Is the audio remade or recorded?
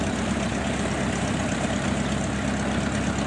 recorded